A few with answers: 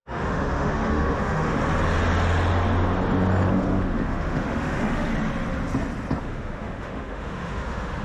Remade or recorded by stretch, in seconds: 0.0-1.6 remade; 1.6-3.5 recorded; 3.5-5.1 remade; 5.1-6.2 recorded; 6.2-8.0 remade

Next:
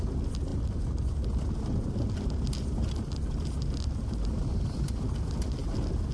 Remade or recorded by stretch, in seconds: 0.0-6.1 recorded

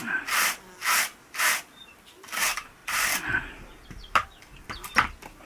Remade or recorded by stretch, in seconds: 0.0-5.5 recorded

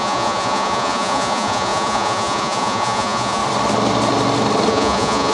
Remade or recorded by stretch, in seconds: 0.0-3.4 remade; 3.4-4.7 recorded; 4.7-5.3 remade